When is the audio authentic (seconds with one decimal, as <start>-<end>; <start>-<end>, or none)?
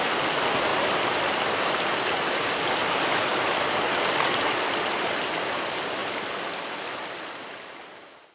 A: 0.0-0.7; 2.7-3.3; 4.7-8.3